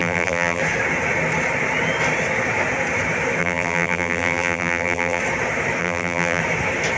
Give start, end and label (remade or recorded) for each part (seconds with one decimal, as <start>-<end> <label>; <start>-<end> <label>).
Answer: 0.0-0.6 remade; 0.6-3.4 recorded; 3.4-5.2 remade; 5.2-5.8 recorded; 5.8-6.4 remade; 6.4-7.0 recorded